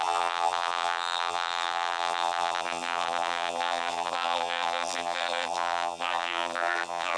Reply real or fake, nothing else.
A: fake